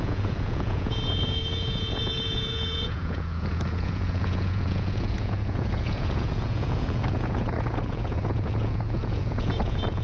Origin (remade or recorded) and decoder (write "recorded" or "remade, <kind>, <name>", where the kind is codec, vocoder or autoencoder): remade, vocoder, Vocos